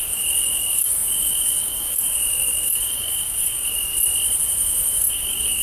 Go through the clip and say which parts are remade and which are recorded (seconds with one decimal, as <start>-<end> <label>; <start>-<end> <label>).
0.0-3.9 remade; 3.9-5.1 recorded; 5.1-5.6 remade